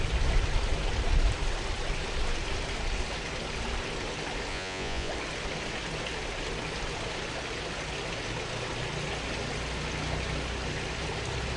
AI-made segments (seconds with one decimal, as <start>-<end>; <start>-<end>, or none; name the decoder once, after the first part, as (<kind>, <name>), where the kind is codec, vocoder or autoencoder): 4.5-5.1 (vocoder, Vocos)